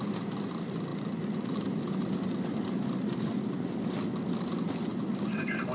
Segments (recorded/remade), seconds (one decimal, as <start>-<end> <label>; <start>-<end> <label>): 0.0-0.9 recorded; 0.9-4.3 remade; 4.3-4.9 recorded; 4.9-5.7 remade